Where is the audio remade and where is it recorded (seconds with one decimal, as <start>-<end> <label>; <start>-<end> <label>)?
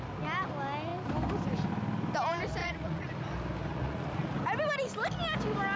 0.0-2.6 recorded; 2.6-3.1 remade; 3.1-3.7 recorded; 3.7-4.3 remade; 4.3-5.8 recorded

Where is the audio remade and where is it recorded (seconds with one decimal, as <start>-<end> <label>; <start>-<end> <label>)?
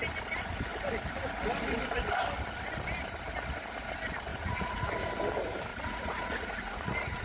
0.0-4.3 recorded; 4.3-4.9 remade; 4.9-5.7 recorded; 5.7-7.2 remade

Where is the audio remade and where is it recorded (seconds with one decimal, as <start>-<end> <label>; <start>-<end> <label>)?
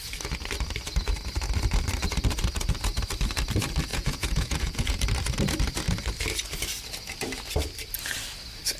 0.0-3.9 recorded; 3.9-5.0 remade; 5.0-8.8 recorded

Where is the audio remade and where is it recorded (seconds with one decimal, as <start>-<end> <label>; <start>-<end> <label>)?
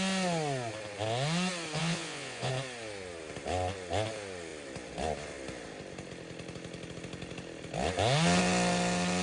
0.0-1.8 recorded; 1.8-2.5 remade; 2.5-9.2 recorded